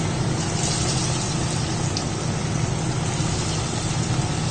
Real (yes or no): yes